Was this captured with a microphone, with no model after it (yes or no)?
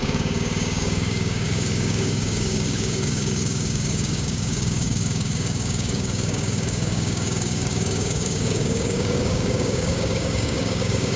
no